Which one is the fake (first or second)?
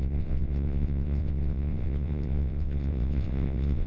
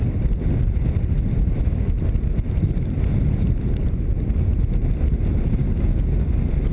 first